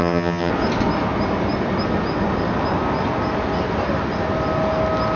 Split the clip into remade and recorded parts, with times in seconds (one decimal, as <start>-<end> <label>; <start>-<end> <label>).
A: 0.0-0.5 remade; 0.5-5.2 recorded